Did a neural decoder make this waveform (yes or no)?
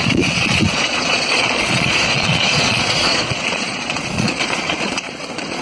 yes